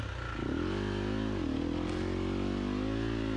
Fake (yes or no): no